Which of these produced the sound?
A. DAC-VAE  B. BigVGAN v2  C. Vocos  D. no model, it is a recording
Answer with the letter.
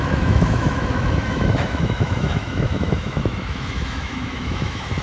A